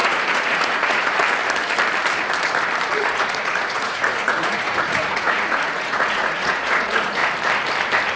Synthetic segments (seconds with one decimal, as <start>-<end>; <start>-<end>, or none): 0.0-1.2; 3.0-7.2